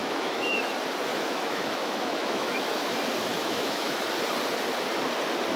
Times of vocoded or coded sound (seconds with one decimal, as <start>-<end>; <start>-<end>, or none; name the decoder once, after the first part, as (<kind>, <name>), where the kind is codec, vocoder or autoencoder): 0.0-0.7 (autoencoder, DAC-VAE); 1.1-2.9; 3.3-4.0